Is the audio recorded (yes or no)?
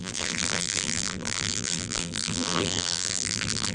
no